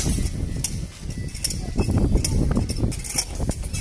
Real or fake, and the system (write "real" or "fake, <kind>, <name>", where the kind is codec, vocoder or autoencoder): real